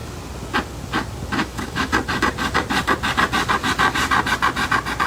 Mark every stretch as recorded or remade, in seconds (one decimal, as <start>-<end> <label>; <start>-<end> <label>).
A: 0.0-1.4 recorded; 1.4-1.9 remade; 1.9-5.1 recorded